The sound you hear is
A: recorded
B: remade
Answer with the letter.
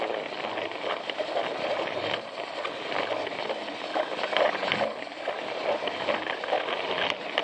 A